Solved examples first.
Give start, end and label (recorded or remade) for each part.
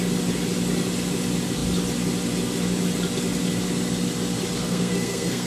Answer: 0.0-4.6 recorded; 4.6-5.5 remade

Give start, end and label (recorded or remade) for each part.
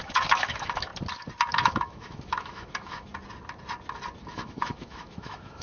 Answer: 0.0-0.9 remade; 0.9-1.5 recorded; 1.5-3.1 remade; 3.1-4.2 recorded; 4.2-5.6 remade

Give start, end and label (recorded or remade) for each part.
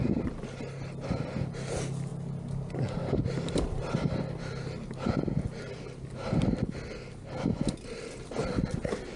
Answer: 0.0-9.2 recorded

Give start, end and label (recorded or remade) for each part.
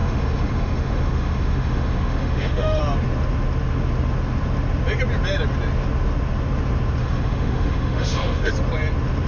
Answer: 0.0-2.8 remade; 2.8-7.0 recorded; 7.0-8.5 remade; 8.5-9.3 recorded